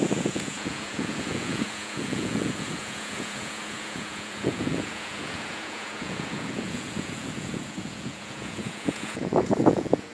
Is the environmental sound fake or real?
fake